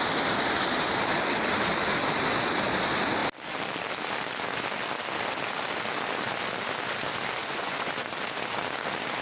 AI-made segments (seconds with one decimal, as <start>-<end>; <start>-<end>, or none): 7.4-7.9